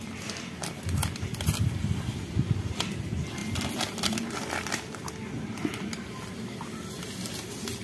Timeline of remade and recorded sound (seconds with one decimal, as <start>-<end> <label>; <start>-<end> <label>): 0.0-7.8 recorded